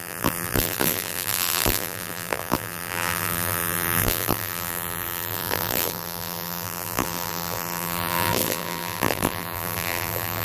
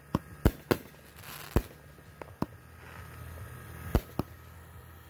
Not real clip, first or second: first